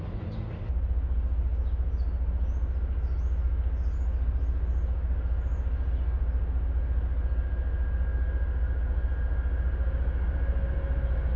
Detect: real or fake real